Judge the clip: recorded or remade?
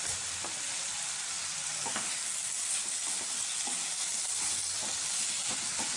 recorded